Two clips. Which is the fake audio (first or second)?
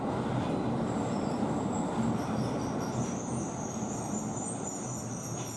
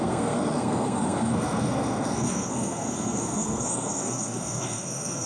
second